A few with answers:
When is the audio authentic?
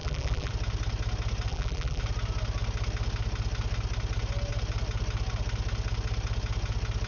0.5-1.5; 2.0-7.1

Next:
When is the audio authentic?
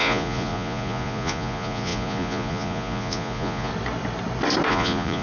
3.7-4.7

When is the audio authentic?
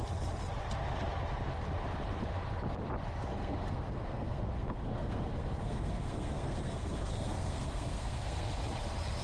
0.0-3.3; 8.5-9.2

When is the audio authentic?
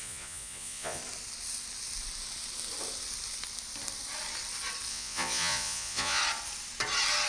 1.0-4.9; 6.2-7.3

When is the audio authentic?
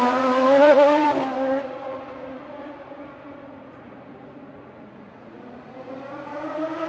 1.1-1.6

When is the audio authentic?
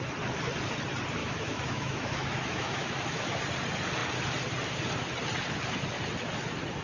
0.0-1.2; 3.4-6.8